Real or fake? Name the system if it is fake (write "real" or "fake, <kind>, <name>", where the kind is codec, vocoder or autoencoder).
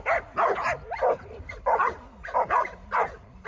real